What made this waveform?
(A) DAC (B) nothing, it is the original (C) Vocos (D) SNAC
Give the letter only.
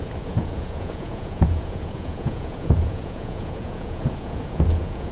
C